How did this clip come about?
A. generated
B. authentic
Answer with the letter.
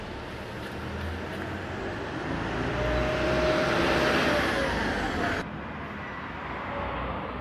B